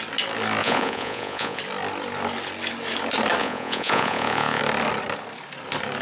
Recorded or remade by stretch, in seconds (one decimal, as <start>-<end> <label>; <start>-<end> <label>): 0.0-0.6 recorded; 0.6-1.6 remade; 1.6-3.4 recorded; 3.4-4.6 remade; 4.6-6.0 recorded